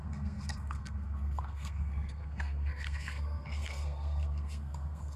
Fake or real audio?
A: fake